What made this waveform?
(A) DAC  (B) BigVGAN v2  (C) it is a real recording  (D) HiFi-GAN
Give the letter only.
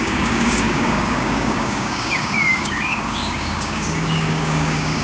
A